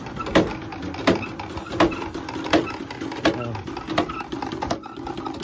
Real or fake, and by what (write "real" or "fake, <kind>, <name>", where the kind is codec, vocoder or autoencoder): real